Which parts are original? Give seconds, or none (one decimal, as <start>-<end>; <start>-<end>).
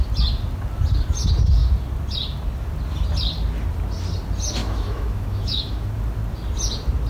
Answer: 0.0-4.6; 5.9-7.1